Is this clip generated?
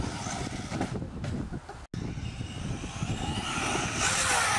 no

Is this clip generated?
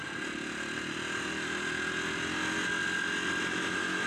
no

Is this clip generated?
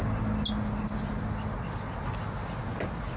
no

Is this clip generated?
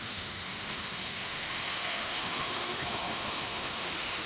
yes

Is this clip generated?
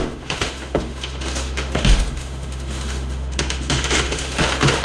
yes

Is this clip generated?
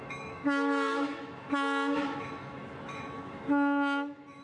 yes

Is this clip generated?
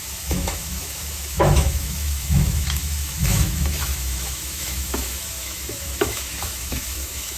yes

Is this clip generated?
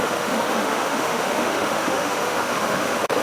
yes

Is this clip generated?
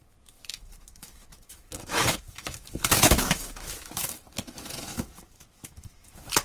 yes